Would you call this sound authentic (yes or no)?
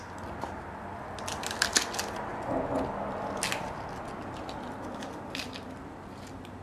yes